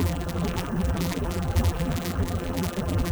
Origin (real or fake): fake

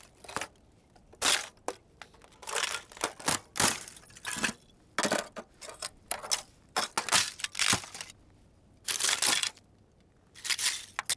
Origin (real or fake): real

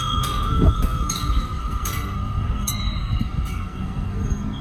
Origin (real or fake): fake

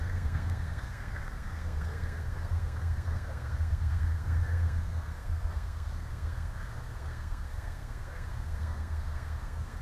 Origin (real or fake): fake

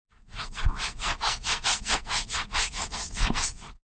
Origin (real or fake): fake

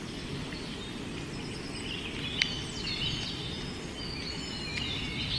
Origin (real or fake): real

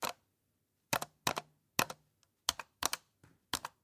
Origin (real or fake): real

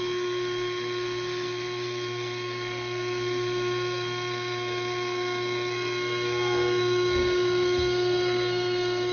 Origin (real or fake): fake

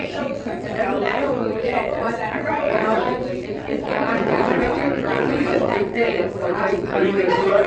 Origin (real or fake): fake